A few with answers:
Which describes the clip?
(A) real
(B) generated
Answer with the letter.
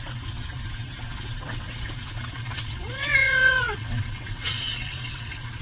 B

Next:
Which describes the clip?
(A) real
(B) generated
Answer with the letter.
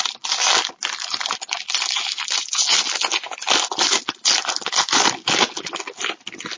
A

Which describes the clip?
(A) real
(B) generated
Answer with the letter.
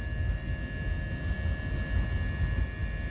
A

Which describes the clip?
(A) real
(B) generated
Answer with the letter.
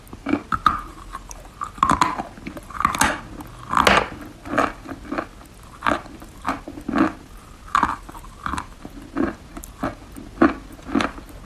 A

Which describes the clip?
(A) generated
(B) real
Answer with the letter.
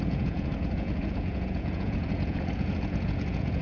A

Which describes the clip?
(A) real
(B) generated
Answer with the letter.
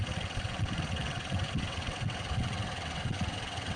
B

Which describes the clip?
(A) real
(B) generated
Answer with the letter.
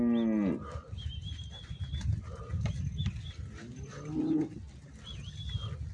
A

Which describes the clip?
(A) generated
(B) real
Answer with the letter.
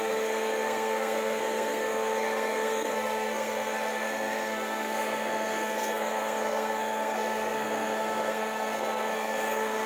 A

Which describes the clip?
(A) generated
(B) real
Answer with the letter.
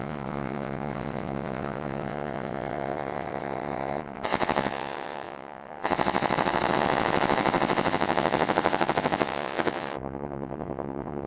A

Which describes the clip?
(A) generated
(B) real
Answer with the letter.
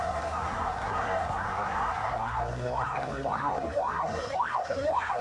A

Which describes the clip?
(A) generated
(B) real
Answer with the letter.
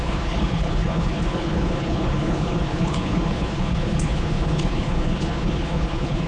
A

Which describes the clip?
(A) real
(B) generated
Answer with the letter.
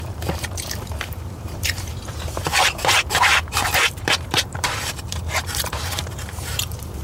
B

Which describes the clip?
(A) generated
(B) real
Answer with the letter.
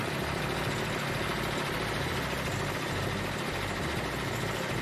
B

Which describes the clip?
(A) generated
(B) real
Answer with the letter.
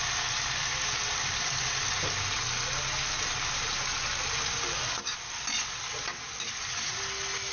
B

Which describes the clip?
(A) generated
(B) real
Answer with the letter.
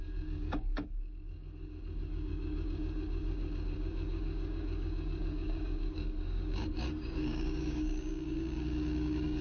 A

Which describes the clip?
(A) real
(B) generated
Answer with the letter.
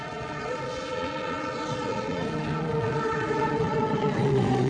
B